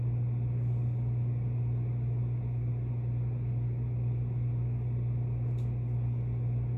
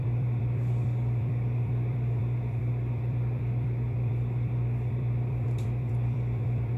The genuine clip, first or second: first